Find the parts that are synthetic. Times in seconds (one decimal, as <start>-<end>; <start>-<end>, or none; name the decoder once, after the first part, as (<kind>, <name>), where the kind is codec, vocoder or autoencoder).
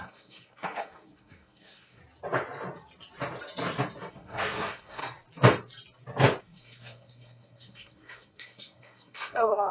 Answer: 0.0-2.0 (codec, SNAC); 4.1-5.0; 6.4-9.7